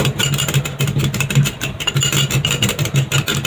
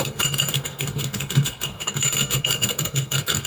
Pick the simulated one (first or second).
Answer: second